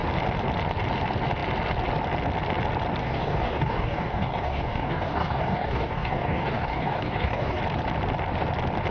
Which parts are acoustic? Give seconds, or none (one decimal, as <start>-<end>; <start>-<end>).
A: 0.0-3.0; 7.6-8.9